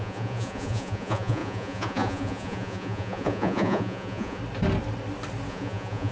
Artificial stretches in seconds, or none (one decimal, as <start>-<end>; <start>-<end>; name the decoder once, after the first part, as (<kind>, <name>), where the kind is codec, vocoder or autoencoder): 0.0-4.4 (vocoder, Vocos); 5.5-6.1